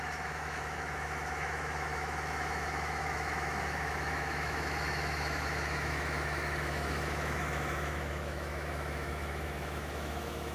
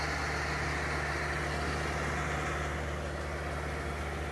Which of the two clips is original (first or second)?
second